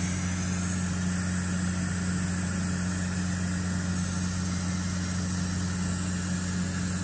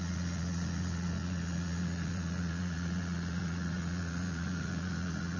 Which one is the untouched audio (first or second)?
first